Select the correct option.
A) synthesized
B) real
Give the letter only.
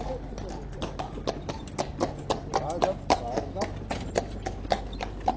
B